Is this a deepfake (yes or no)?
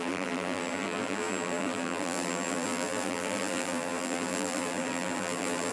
yes